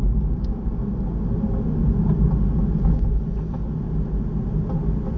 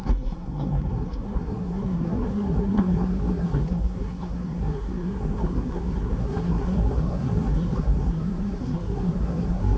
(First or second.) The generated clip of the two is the second